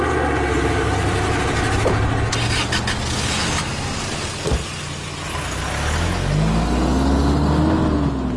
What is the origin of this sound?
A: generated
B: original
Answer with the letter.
B